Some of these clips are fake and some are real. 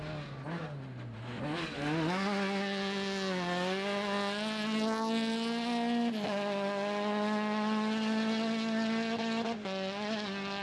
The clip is real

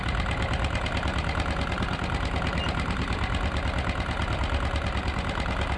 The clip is real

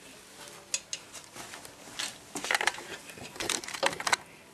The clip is real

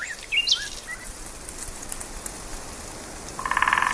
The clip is fake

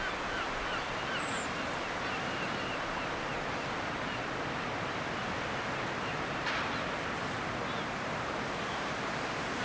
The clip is real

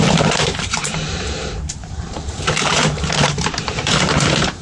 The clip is fake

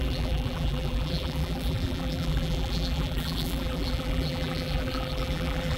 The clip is fake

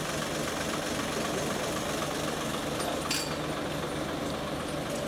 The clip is real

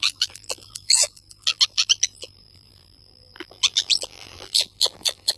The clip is fake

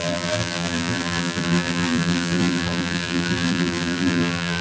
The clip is fake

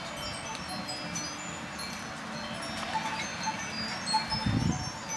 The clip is real